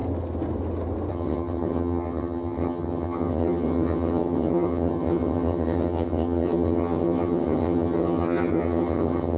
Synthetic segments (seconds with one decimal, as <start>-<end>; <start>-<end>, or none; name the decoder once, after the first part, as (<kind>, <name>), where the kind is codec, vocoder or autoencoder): 1.1-9.4 (vocoder, HiFi-GAN)